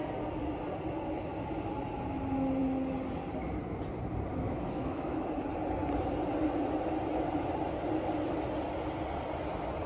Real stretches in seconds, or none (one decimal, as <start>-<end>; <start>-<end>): 0.0-4.3; 5.3-9.9

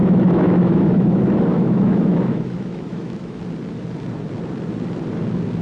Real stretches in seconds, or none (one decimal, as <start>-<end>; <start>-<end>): 3.4-5.6